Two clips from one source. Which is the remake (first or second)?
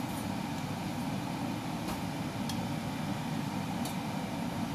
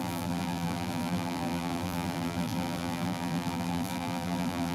second